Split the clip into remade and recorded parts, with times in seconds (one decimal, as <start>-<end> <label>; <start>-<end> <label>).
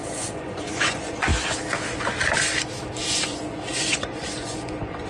0.0-1.3 remade; 1.3-3.1 recorded; 3.1-5.1 remade